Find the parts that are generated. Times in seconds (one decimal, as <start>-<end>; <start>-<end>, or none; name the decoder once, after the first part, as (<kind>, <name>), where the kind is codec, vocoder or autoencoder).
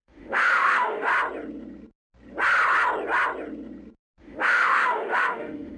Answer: 0.0-1.1 (autoencoder, DAC-VAE); 4.2-5.8